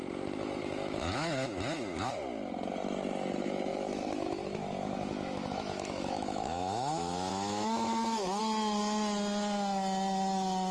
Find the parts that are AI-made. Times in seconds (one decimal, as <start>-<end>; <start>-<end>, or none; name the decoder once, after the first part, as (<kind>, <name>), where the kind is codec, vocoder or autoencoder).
0.6-2.1 (autoencoder, DAC-VAE); 3.7-8.4